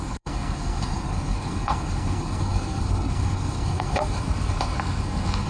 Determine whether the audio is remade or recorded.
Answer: remade